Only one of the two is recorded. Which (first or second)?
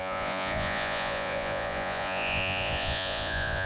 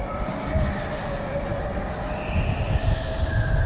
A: second